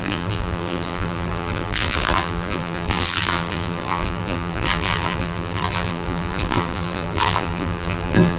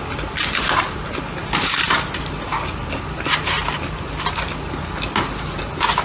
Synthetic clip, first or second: first